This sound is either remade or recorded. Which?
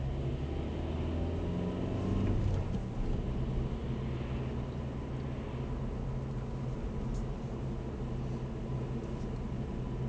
recorded